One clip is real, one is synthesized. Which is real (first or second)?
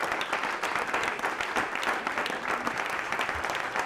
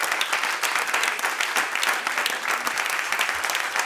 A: second